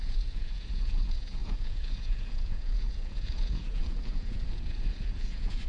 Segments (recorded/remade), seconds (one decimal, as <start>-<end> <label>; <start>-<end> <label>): 0.0-5.7 remade